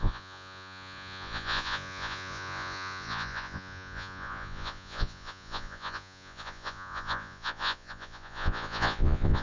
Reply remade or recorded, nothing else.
remade